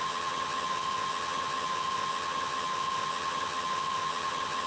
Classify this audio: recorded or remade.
remade